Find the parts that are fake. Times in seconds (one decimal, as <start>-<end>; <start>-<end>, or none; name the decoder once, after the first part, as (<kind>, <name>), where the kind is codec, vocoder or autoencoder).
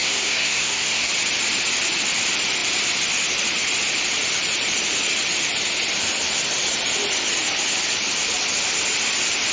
0.0-1.1 (codec, SNAC)